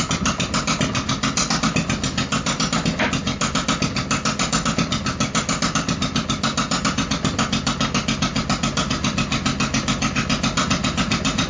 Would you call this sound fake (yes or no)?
no